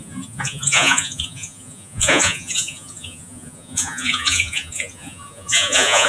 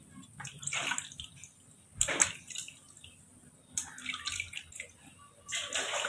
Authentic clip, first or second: second